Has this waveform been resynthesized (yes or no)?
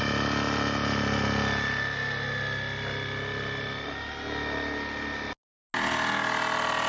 no